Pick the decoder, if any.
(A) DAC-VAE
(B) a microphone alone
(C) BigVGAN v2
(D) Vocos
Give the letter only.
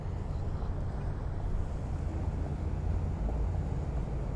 B